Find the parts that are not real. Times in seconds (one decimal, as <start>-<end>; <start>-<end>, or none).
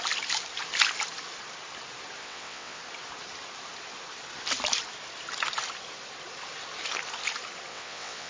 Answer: 2.2-2.8; 7.7-8.3